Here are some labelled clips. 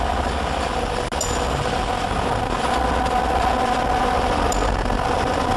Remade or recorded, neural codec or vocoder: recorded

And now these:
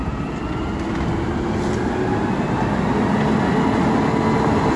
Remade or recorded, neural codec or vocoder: recorded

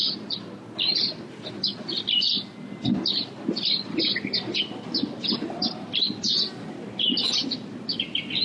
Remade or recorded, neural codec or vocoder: recorded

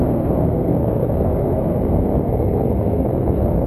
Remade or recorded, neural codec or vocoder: remade, codec, SNAC